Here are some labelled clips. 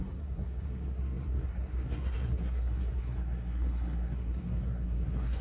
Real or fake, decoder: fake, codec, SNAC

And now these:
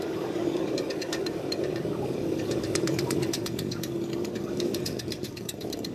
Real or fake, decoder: fake, codec, DAC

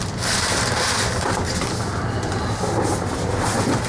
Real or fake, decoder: real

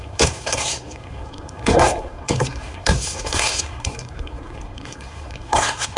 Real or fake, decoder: fake, codec, SNAC